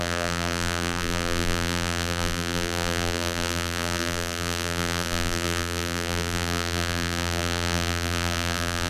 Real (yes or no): no